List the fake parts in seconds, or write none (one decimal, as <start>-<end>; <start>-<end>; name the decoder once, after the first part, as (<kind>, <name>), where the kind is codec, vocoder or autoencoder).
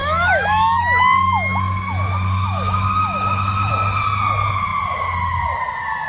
0.0-3.7 (autoencoder, DAC-VAE)